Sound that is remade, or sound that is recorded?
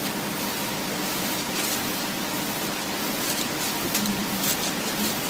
recorded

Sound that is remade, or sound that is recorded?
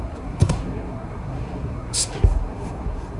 remade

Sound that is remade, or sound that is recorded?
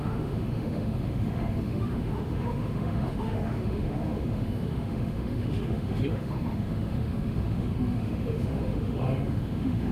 remade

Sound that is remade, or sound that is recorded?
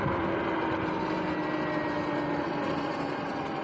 recorded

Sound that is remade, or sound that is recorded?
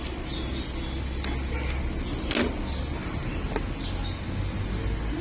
recorded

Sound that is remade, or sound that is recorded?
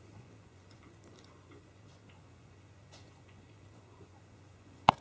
remade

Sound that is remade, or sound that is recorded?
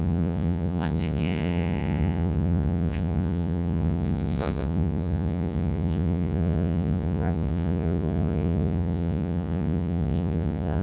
remade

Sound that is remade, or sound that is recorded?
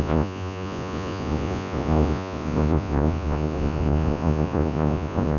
remade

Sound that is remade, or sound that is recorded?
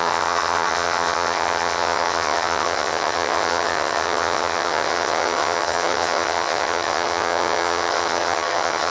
remade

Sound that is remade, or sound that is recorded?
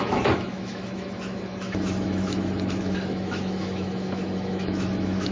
remade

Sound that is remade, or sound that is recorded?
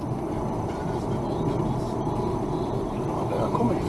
remade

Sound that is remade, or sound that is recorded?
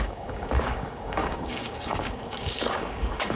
remade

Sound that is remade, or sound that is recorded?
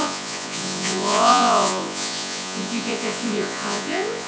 remade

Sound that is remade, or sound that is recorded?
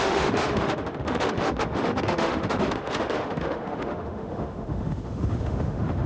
remade